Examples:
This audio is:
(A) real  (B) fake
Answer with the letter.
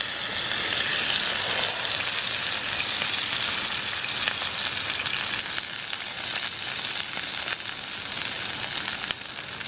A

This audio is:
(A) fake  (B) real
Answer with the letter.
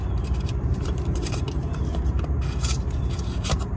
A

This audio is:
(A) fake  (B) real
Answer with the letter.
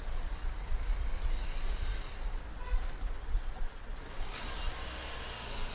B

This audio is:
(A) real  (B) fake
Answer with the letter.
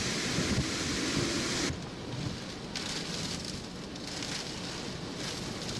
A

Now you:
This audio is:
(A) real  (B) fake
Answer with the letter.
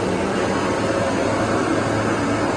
A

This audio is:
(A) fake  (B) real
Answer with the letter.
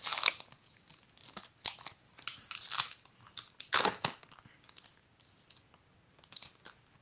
B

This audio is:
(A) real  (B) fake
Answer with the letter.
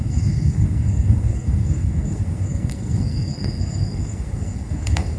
B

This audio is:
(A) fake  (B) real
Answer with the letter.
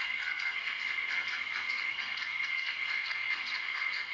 A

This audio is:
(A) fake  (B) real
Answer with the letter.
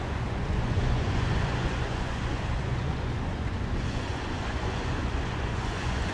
A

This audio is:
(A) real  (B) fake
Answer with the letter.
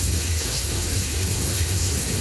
B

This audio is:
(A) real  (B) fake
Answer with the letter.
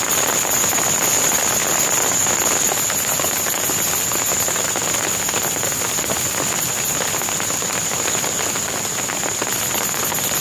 A